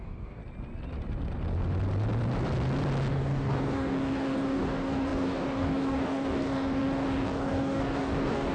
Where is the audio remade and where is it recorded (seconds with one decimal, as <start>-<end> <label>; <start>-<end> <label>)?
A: 0.0-0.4 remade; 0.4-3.1 recorded; 3.1-8.5 remade